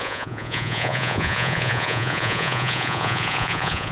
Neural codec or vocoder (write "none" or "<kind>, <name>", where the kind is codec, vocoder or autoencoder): vocoder, Vocos